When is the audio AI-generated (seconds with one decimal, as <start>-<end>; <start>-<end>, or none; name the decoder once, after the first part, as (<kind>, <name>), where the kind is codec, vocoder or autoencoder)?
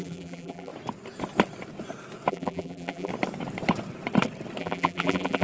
0.0-0.7 (vocoder, BigVGAN v2); 2.3-3.1; 4.6-5.4